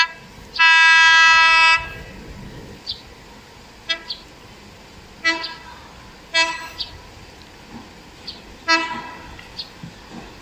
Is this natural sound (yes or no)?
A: yes